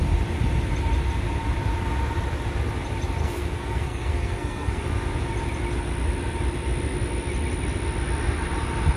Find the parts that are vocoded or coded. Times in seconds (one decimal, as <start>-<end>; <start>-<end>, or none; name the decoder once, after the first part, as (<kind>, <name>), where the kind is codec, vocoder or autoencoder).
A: 3.2-4.8 (codec, SNAC)

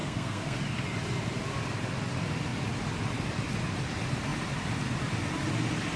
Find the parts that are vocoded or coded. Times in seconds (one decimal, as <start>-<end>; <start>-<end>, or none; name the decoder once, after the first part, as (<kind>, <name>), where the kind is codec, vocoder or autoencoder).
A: 0.0-0.6 (codec, SNAC)

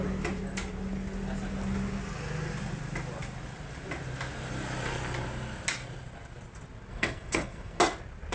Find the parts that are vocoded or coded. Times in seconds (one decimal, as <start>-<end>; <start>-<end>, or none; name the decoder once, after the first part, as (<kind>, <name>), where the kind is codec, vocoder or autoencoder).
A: 6.9-7.8 (codec, SNAC)